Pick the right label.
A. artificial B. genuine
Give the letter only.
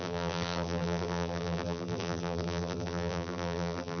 A